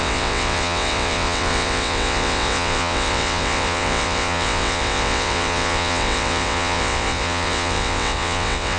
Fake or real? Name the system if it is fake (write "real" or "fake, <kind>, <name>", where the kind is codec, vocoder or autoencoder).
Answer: fake, vocoder, WaveNeXt